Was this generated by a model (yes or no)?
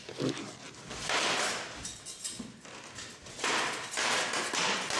yes